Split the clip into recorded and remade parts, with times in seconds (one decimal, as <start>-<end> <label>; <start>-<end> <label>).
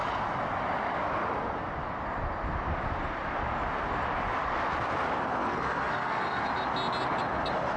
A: 0.0-5.4 recorded; 5.4-6.4 remade; 6.4-7.8 recorded